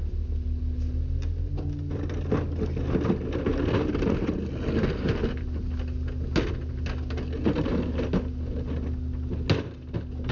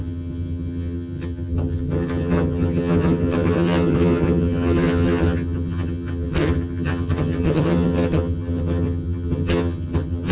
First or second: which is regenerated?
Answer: second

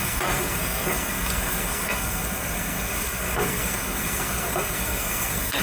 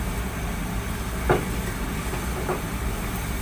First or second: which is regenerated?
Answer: first